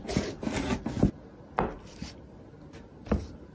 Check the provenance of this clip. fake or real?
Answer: real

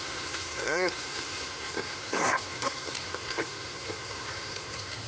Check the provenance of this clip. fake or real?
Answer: fake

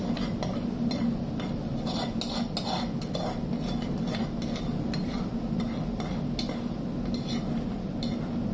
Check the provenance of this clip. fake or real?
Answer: real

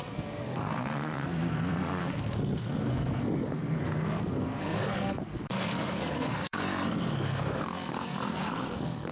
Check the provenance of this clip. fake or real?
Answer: fake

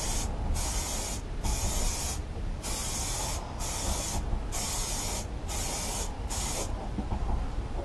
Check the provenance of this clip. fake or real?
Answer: real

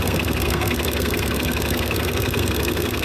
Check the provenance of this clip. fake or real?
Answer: fake